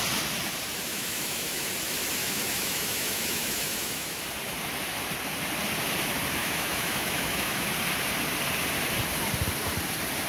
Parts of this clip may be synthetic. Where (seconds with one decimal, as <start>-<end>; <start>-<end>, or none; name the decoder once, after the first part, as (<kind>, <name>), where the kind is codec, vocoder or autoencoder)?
0.9-1.7 (autoencoder, DAC-VAE); 2.2-4.2; 6.4-7.7